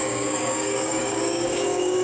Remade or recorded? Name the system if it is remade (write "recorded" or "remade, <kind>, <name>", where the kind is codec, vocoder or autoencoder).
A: remade, codec, DAC